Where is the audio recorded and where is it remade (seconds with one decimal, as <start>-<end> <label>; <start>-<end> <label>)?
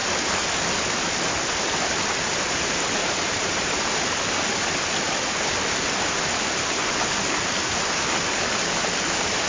0.0-3.0 recorded; 3.0-4.3 remade; 4.3-9.5 recorded